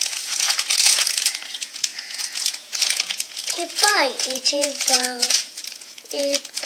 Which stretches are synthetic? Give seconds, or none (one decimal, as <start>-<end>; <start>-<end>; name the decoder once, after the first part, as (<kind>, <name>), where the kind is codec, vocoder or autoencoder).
0.0-6.7 (vocoder, Vocos)